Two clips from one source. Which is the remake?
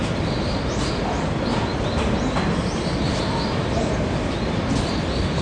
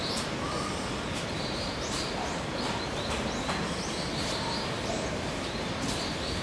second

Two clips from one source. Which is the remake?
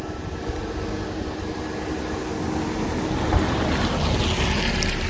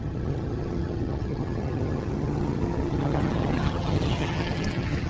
second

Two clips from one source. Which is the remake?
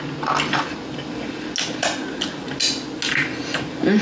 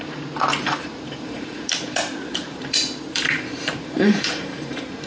second